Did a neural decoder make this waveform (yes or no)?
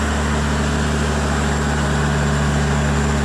no